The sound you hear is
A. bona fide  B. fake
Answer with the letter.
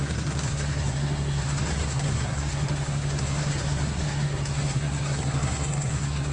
B